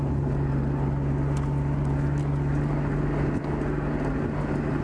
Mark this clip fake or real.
real